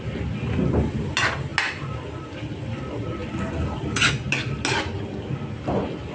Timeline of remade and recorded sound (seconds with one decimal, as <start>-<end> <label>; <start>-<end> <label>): 0.0-6.1 recorded